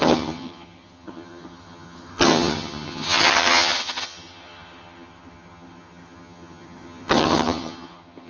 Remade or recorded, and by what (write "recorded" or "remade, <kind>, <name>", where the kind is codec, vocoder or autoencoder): remade, vocoder, HiFi-GAN